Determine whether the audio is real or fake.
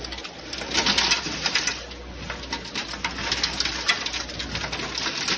real